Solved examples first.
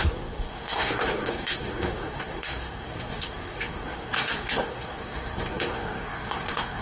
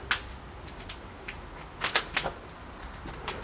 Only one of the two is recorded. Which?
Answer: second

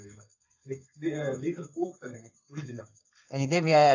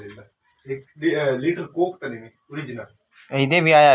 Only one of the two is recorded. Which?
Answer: second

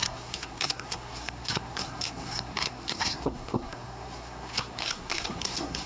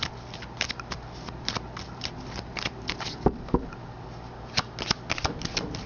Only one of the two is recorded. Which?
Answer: second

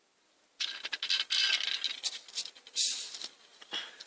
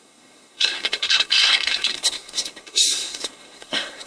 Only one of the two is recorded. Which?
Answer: first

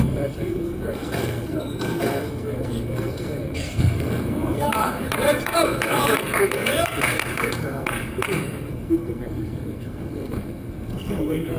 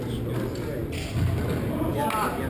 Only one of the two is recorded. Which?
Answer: second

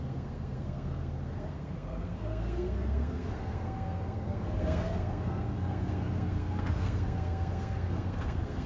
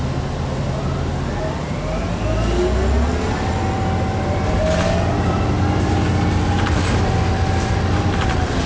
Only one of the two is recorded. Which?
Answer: second